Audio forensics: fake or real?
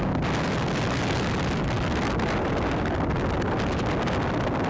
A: real